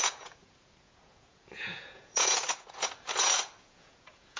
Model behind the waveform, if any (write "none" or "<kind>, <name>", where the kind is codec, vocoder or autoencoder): vocoder, Vocos